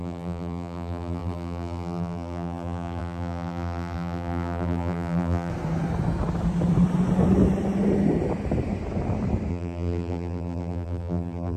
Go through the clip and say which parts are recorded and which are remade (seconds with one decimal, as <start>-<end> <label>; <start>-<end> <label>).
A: 0.0-5.5 remade; 5.5-9.5 recorded; 9.5-11.6 remade